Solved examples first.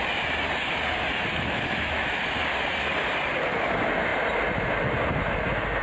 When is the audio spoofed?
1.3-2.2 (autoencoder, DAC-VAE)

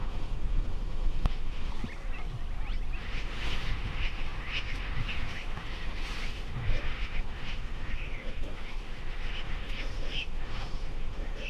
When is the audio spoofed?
0.0-1.7 (autoencoder, DAC-VAE); 3.0-11.5

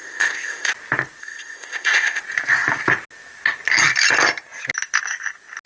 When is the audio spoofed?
0.0-0.7 (codec, ZipCodec); 1.2-2.2

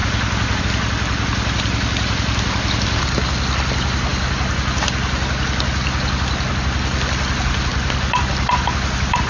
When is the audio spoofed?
none

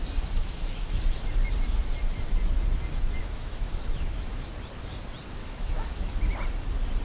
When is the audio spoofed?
0.4-1.0 (autoencoder, DAC-VAE); 3.2-4.5; 5.4-6.2

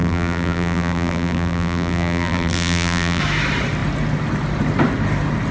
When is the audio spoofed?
0.0-3.2 (vocoder, BigVGAN v2)

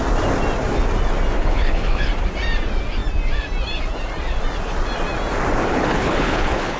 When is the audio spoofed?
1.4-2.1 (codec, HILCodec); 5.7-6.8